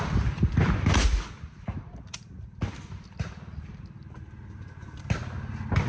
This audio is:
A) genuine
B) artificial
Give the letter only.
A